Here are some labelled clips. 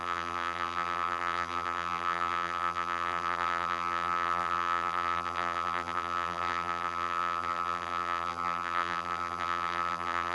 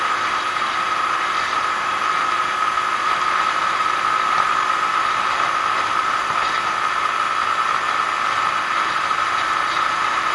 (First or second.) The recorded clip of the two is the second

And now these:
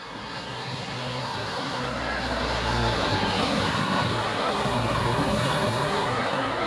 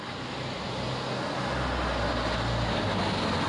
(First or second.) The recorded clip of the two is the second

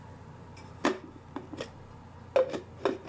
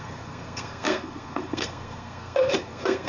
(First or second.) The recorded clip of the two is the first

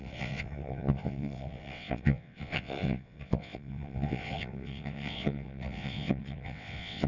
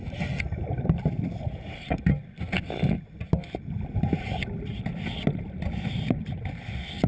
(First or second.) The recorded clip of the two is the second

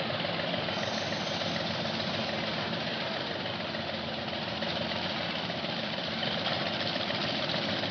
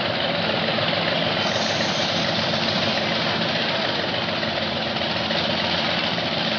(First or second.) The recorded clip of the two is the second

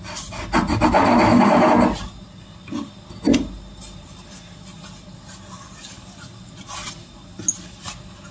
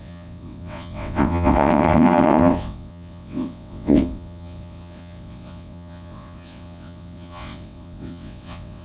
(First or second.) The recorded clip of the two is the first